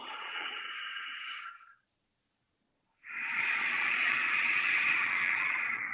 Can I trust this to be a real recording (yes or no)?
no